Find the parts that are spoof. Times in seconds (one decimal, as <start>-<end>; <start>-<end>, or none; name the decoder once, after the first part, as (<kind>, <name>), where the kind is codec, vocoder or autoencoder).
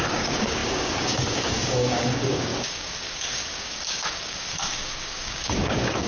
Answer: 0.0-6.1 (codec, DAC)